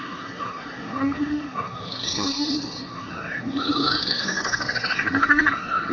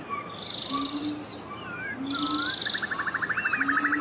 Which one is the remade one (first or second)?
first